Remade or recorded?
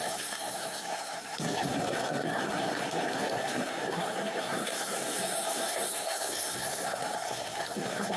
remade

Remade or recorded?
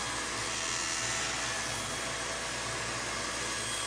recorded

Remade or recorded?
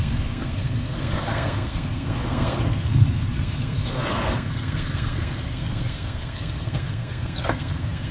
remade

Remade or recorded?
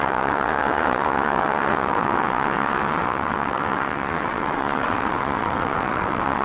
remade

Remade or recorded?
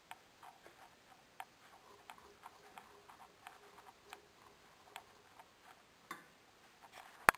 recorded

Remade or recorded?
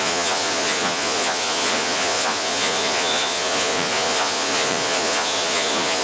remade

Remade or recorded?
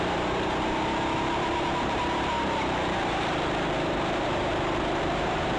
remade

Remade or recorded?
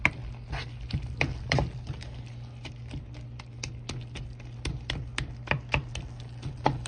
recorded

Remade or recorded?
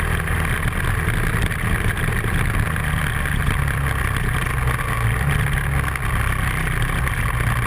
recorded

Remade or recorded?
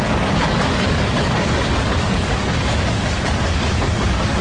remade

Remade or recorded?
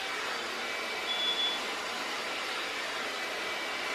recorded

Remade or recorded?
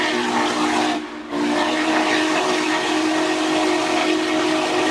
recorded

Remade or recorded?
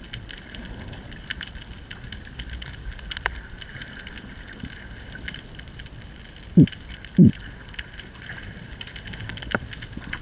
recorded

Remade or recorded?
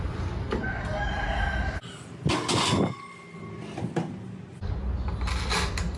recorded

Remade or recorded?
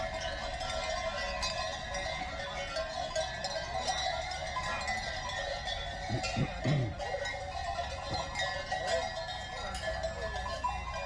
recorded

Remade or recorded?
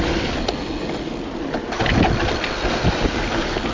recorded